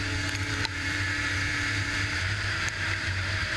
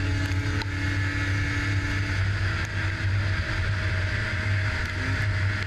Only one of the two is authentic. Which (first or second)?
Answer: second